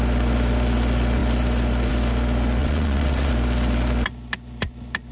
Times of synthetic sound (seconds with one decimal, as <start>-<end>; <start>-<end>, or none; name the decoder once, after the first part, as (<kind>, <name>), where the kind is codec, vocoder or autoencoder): 2.6-3.3 (vocoder, WaveNeXt)

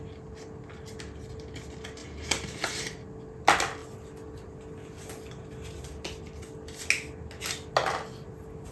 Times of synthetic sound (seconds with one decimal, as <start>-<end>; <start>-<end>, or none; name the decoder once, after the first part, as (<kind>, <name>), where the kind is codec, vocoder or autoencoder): 2.0-2.8 (vocoder, BigVGAN v2)

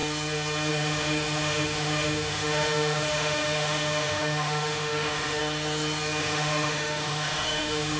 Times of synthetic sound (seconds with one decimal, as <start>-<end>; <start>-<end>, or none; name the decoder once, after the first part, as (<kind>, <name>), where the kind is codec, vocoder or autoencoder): 0.7-5.4 (autoencoder, DAC-VAE); 6.2-8.0

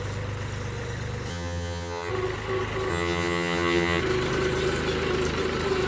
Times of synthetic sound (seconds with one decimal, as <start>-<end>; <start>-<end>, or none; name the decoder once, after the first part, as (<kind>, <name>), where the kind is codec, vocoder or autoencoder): 1.3-2.1 (vocoder, HiFi-GAN); 2.9-4.0

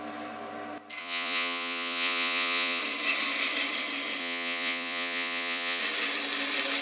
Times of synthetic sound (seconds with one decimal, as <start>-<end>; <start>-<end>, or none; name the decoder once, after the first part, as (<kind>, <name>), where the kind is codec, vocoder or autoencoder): 1.0-2.8 (vocoder, Vocos); 4.2-5.8